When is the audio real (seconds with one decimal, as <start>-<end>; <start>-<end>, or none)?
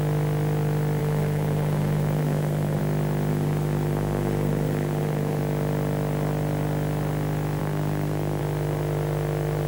0.0-1.0; 2.8-3.3; 5.4-7.6; 8.4-9.7